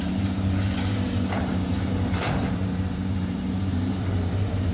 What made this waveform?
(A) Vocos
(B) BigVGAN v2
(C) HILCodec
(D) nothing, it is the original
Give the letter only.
B